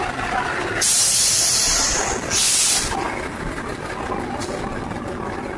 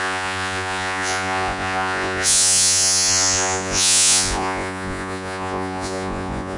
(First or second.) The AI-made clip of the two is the second